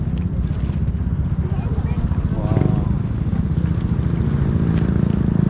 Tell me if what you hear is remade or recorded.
recorded